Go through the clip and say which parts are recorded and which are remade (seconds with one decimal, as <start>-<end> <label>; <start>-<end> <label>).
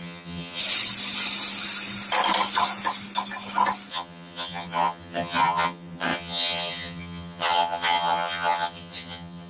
0.0-0.6 remade; 0.6-3.9 recorded; 3.9-9.5 remade